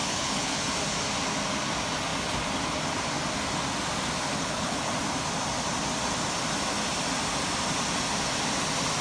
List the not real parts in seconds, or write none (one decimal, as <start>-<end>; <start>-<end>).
0.0-0.6; 4.3-4.9